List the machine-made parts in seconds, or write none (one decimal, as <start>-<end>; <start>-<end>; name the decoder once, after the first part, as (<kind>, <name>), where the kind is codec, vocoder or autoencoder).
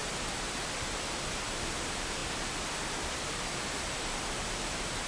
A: none